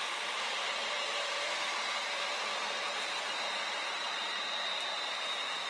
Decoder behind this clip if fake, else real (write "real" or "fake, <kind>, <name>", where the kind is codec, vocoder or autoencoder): fake, vocoder, BigVGAN v2